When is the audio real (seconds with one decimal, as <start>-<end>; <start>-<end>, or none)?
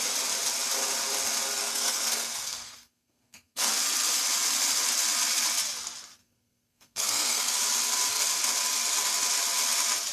0.0-1.6; 3.7-6.2; 7.5-10.1